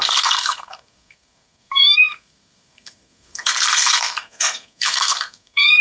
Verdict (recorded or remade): remade